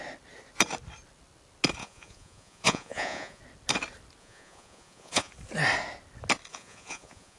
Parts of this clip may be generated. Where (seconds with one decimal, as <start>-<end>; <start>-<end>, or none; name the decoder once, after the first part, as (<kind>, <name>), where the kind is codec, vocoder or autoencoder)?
1.8-3.4 (vocoder, Vocos); 4.2-5.3; 6.5-7.4